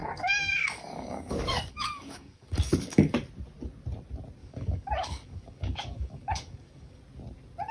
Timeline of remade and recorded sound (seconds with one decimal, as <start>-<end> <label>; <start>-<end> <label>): 0.0-3.2 remade; 3.2-4.4 recorded; 4.4-7.0 remade; 7.0-7.7 recorded